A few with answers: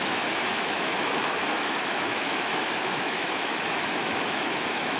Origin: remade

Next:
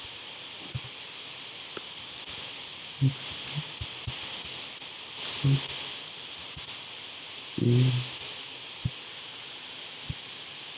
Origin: recorded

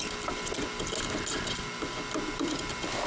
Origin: recorded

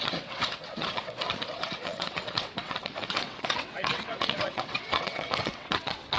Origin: remade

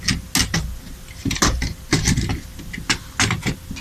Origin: recorded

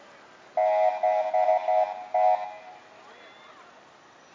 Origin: recorded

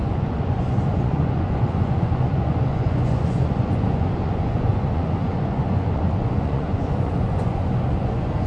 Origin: remade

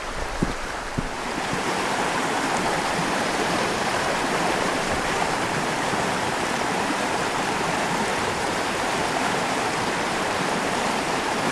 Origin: remade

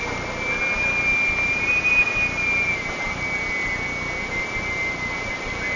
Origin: recorded